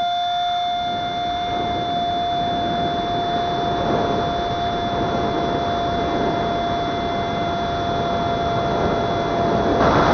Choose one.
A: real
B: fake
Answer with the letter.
A